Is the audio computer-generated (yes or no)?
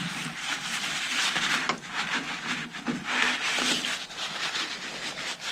no